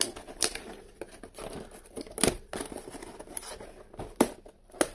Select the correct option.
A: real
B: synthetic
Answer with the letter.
A